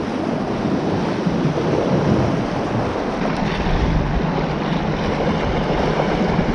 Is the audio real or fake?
real